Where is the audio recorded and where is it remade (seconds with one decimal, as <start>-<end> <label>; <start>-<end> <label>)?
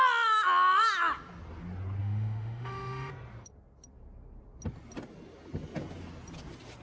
0.0-2.0 recorded; 2.0-3.1 remade; 3.1-6.8 recorded